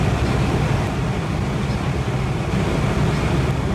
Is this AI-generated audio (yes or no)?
no